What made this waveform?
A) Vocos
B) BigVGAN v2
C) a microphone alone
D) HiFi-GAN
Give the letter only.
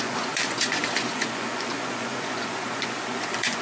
A